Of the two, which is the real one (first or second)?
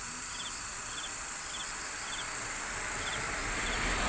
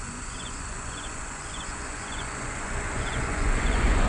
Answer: first